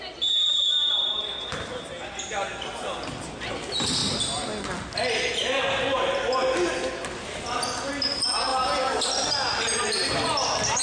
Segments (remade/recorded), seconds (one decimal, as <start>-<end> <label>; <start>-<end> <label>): 0.0-10.8 recorded